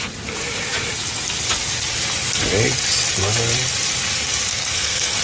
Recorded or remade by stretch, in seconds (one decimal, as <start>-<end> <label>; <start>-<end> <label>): 0.0-4.5 recorded; 4.5-5.2 remade